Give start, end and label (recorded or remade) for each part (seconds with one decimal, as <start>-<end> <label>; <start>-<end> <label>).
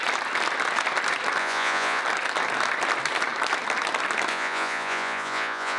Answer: 0.0-1.4 recorded; 1.4-2.0 remade; 2.0-4.3 recorded; 4.3-5.8 remade